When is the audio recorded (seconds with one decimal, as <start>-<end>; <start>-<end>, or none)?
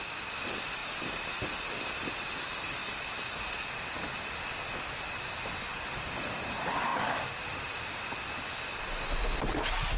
0.0-10.0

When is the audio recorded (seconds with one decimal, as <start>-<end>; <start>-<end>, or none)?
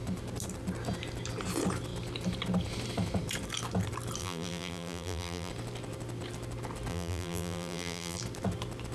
0.0-4.2; 5.5-6.9; 8.2-8.9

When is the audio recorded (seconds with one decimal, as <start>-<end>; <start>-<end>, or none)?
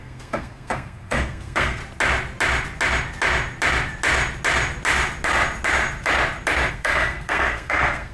1.8-6.7